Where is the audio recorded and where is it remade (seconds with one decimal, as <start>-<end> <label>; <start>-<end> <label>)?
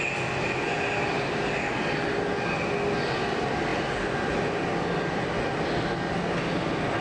0.0-7.0 recorded